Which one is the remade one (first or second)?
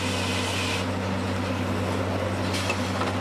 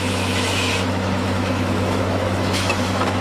second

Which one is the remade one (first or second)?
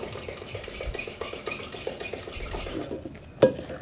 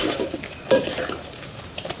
second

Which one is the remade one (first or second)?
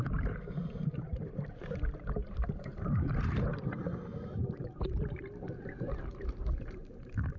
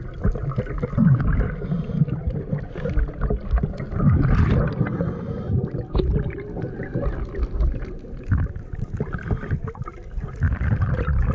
first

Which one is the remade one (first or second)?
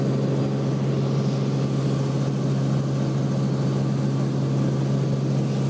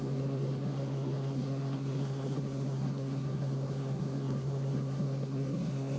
second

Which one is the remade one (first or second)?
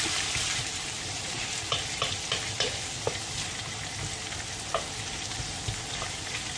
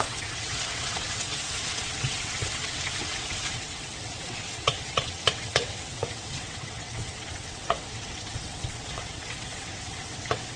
second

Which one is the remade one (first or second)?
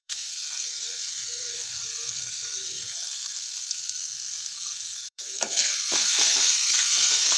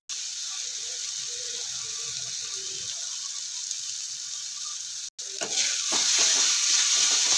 first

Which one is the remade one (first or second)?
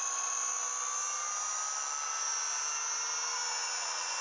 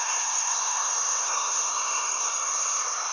second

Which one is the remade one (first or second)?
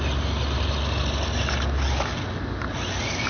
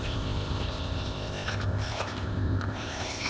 second